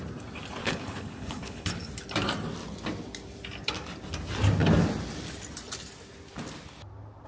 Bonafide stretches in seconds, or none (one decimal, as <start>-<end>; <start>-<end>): 0.0-0.6; 1.9-7.3